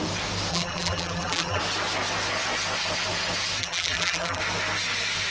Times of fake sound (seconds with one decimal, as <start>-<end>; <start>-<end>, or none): 0.5-1.6; 3.6-4.4